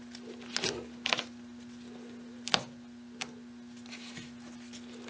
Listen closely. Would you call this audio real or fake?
real